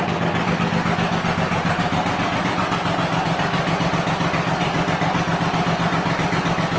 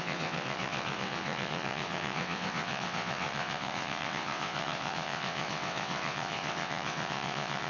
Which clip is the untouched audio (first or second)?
first